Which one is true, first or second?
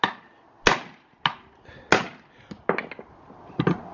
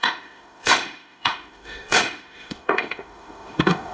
first